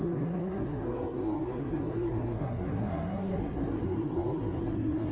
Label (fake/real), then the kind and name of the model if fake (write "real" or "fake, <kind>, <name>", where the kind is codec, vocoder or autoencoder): fake, codec, SNAC